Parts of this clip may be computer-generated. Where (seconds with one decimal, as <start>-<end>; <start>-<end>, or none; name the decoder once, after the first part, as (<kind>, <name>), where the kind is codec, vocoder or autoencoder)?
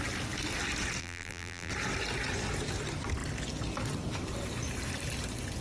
1.0-1.7 (vocoder, BigVGAN v2)